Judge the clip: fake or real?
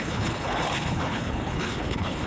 fake